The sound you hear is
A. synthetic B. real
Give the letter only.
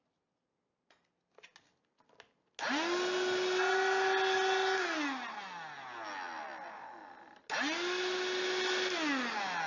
B